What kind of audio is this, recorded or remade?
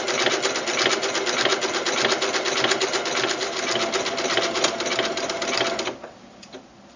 recorded